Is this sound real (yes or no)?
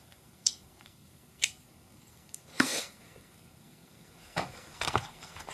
no